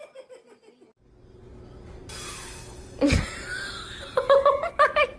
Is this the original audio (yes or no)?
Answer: yes